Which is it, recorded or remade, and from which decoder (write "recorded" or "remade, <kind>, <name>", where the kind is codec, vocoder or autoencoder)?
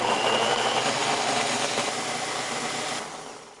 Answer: recorded